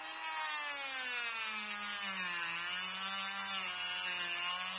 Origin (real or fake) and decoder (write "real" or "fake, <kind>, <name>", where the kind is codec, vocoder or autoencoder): real